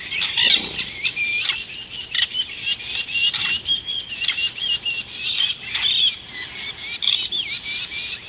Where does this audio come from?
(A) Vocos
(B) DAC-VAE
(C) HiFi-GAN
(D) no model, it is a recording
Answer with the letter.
D